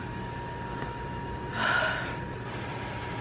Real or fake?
real